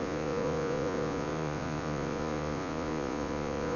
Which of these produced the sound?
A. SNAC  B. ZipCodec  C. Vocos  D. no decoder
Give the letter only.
C